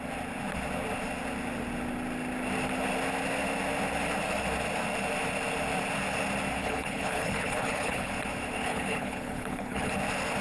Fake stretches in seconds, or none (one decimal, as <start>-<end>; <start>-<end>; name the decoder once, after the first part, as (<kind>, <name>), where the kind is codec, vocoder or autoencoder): 6.6-8.1 (codec, HILCodec); 8.6-9.9